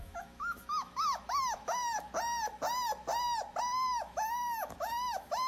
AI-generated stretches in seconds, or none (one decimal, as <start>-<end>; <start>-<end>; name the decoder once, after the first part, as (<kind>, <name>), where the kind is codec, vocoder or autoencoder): 0.0-2.1 (autoencoder, DAC-VAE); 3.6-5.5